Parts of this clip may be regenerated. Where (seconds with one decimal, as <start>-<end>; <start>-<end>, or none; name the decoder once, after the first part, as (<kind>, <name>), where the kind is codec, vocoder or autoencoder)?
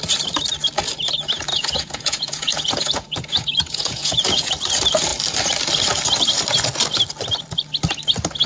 1.5-4.5 (vocoder, Vocos)